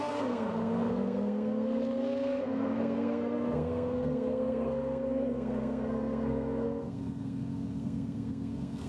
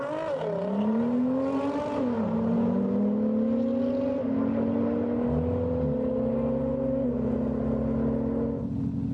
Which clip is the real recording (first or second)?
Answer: second